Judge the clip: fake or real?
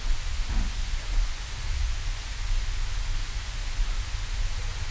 fake